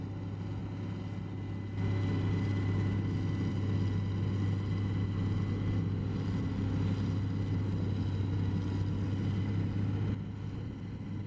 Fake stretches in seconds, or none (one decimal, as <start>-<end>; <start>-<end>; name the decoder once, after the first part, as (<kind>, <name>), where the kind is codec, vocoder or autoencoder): none